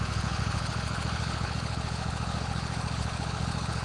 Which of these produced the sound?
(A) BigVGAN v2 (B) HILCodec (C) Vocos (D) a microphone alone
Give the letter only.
B